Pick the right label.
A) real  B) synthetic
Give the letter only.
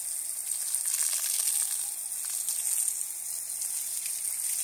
A